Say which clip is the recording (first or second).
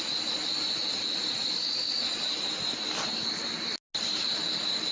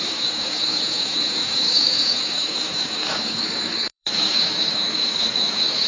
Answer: first